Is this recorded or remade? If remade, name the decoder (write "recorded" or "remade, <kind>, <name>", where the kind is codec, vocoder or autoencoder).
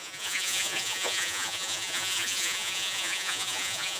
remade, vocoder, Vocos